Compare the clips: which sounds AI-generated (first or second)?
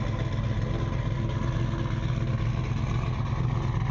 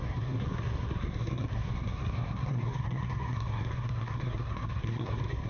second